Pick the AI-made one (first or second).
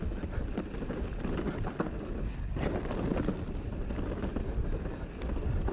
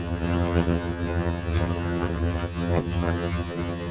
second